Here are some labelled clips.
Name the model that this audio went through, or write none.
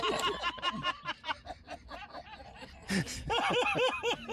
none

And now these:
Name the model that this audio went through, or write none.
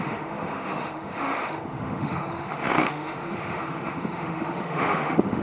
autoencoder, DAC-VAE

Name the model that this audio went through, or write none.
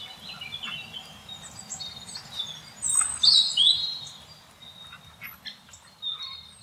none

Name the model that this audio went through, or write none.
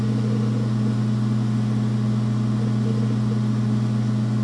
none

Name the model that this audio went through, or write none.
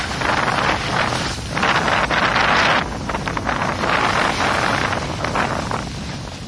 none